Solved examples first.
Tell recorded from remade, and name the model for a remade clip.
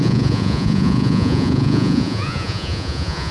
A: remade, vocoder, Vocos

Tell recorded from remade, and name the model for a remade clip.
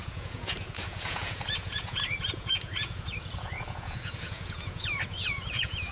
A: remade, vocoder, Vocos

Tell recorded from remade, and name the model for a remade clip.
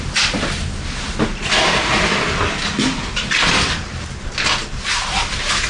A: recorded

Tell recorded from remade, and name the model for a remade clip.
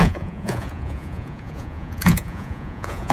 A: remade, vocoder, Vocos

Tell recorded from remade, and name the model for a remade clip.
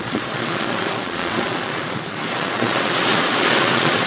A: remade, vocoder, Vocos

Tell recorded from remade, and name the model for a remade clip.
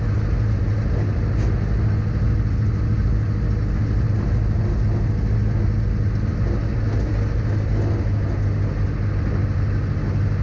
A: recorded